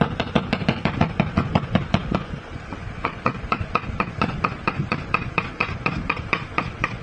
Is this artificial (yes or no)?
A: yes